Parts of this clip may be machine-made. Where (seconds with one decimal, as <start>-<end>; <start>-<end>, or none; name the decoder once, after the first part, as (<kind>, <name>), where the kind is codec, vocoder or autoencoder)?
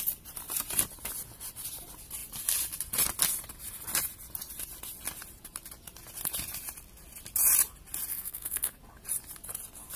8.1-8.8 (codec, SNAC)